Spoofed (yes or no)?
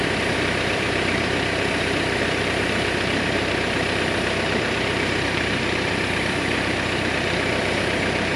yes